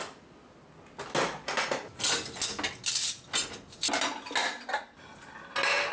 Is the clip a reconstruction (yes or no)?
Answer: no